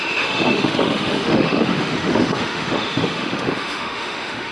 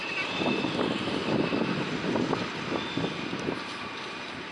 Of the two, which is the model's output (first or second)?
first